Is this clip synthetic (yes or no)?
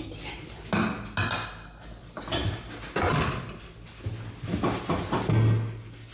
no